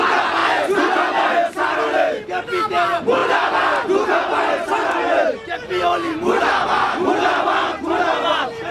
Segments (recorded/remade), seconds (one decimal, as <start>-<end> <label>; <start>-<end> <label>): 0.0-7.7 recorded; 7.7-8.7 remade